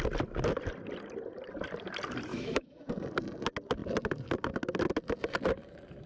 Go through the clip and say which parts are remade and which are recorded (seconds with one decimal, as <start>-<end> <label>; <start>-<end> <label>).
0.0-2.3 recorded; 2.3-2.9 remade; 2.9-6.1 recorded